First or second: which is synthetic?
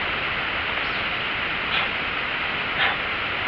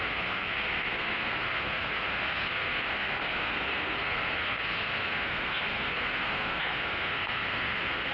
second